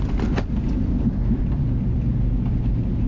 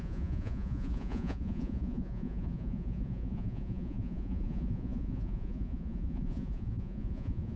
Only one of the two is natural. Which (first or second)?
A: first